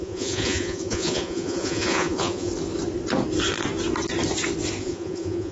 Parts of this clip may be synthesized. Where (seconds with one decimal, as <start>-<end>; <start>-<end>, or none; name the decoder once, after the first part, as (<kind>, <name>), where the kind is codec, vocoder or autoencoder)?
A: 0.0-2.5 (vocoder, Vocos); 4.8-5.5

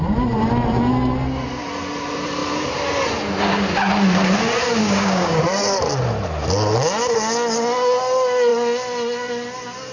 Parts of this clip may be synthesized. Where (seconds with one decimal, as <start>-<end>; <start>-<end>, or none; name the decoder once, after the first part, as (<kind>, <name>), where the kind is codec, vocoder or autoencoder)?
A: 4.8-5.4 (codec, DAC)

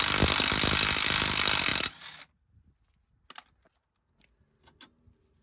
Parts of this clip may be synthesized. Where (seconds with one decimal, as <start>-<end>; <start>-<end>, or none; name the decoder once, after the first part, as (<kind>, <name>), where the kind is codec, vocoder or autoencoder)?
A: none

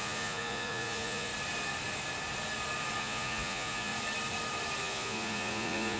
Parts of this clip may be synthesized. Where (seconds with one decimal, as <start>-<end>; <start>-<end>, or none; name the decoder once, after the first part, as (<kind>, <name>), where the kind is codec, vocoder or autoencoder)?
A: 0.0-1.3 (vocoder, Vocos); 3.0-3.9; 4.8-6.0

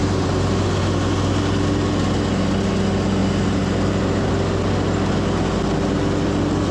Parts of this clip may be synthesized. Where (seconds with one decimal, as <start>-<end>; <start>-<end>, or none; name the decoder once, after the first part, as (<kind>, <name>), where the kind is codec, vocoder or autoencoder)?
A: 0.0-0.8 (vocoder, BigVGAN v2); 3.2-4.3